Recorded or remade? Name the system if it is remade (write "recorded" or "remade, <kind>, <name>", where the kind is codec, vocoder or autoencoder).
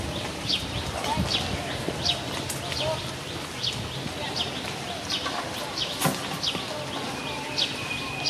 recorded